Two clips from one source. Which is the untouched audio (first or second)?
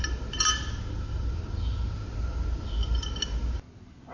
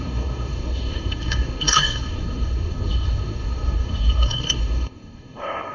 first